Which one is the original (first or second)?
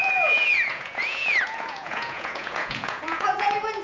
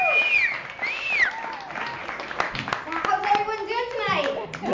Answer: second